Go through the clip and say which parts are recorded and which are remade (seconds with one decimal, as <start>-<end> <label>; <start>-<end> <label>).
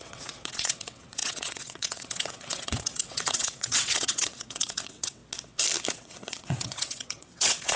0.0-5.2 remade; 5.2-5.9 recorded; 5.9-7.8 remade